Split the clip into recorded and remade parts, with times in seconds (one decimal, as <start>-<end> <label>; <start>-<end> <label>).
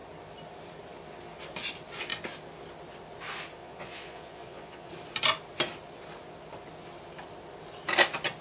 0.0-3.6 recorded; 3.6-4.9 remade; 4.9-8.4 recorded